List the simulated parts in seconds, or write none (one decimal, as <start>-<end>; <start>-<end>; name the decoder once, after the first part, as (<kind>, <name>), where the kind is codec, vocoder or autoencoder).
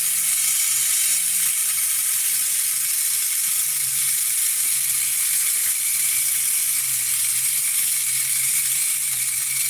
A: 3.6-4.4 (vocoder, BigVGAN v2); 5.6-6.3